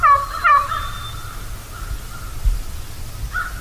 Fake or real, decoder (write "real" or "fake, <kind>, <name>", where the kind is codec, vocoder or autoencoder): real